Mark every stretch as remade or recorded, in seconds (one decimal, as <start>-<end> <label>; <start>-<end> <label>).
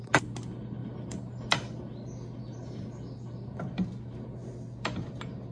0.0-0.8 recorded; 0.8-1.8 remade; 1.8-5.5 recorded